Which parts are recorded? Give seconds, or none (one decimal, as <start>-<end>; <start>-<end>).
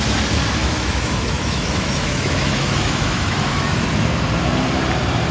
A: 0.0-0.6; 3.8-5.3